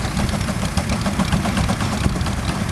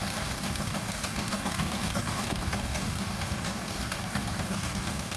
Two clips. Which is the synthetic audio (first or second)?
second